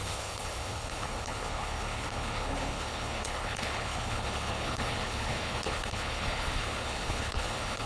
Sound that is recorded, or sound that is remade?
remade